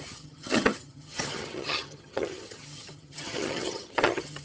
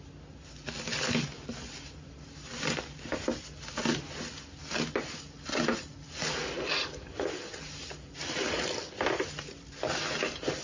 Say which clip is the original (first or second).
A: second